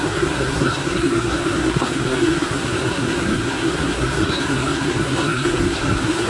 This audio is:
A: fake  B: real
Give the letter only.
A